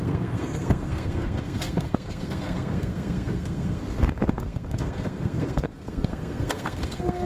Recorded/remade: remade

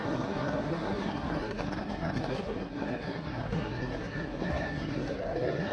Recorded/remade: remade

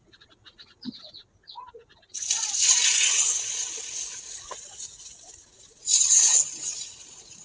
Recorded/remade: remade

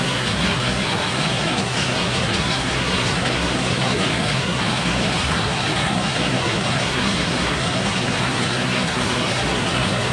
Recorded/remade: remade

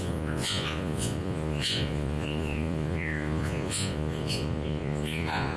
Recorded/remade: remade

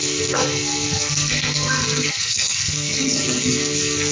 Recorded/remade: remade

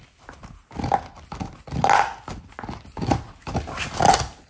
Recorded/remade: recorded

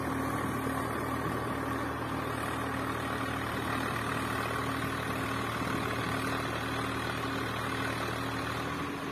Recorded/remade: recorded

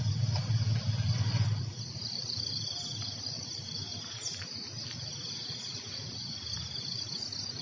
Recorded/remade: recorded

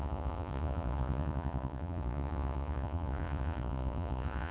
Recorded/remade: remade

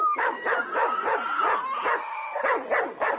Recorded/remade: remade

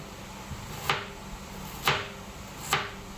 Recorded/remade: recorded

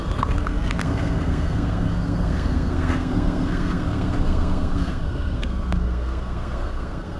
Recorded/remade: remade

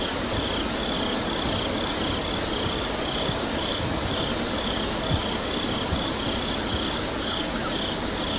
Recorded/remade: recorded